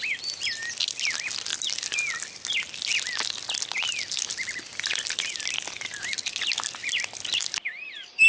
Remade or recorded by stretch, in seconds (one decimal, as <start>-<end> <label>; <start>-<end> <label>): 0.0-8.3 recorded